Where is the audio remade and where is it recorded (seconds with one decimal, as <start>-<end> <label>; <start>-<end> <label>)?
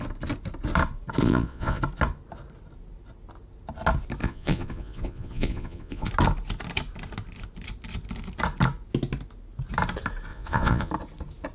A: 0.0-1.2 recorded; 1.2-1.8 remade; 1.8-4.2 recorded; 4.2-6.1 remade; 6.1-10.3 recorded; 10.3-10.9 remade; 10.9-11.5 recorded